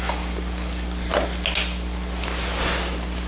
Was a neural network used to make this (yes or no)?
no